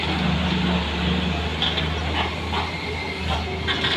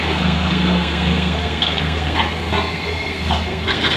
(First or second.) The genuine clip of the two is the first